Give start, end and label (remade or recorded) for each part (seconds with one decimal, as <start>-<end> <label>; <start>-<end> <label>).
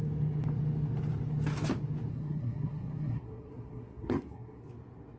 0.0-2.1 recorded; 2.1-4.6 remade; 4.6-5.2 recorded